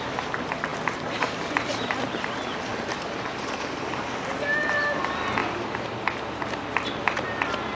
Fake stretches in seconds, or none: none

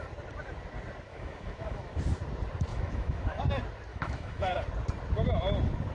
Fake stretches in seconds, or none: 1.1-2.0 (autoencoder, DAC-VAE); 2.7-3.4; 3.9-4.5

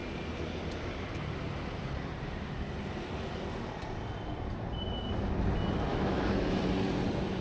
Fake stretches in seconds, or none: 5.9-6.6 (autoencoder, DAC-VAE)

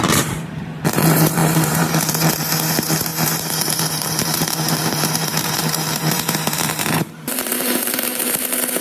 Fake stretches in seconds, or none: 0.0-8.8 (vocoder, BigVGAN v2)

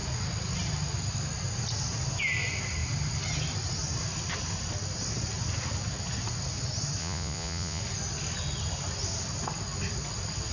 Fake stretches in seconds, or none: 7.0-7.8 (vocoder, Vocos)